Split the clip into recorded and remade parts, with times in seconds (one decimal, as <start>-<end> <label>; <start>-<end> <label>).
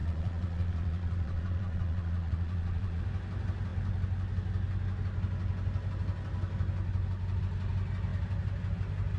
0.0-3.0 remade; 3.0-9.2 recorded